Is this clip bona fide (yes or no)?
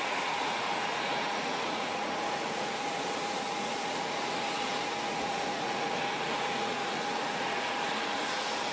no